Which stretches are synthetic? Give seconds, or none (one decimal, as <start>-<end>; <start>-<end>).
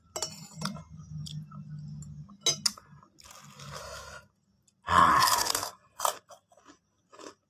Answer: none